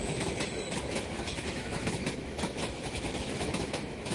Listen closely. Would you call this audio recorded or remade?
remade